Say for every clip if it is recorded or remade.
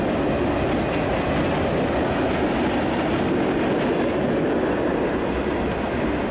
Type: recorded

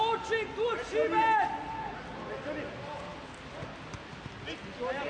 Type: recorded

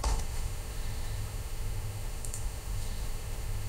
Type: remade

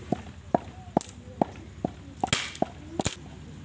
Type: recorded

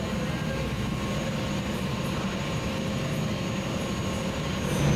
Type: recorded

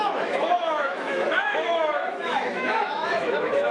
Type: remade